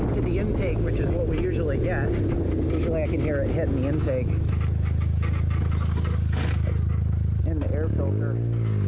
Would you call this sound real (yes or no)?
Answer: yes